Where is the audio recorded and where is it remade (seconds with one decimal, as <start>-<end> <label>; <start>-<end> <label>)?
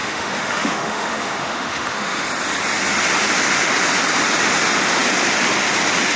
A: 0.0-2.3 remade; 2.3-6.2 recorded